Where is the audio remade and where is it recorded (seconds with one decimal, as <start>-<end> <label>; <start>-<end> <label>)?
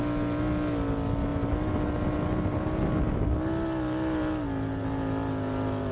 0.0-5.9 recorded